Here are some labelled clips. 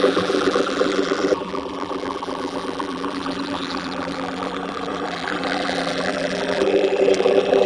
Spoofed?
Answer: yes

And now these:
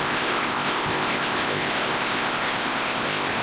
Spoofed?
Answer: yes